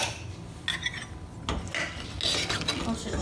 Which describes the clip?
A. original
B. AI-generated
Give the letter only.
A